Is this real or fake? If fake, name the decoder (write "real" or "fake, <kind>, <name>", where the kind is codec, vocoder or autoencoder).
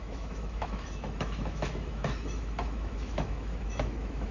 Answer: fake, autoencoder, DAC-VAE